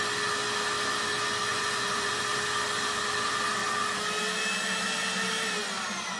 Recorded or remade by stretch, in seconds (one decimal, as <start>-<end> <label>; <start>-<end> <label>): 0.0-1.5 recorded; 1.5-2.1 remade; 2.1-6.2 recorded